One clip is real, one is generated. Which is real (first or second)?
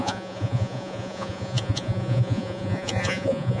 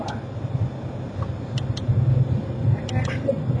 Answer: second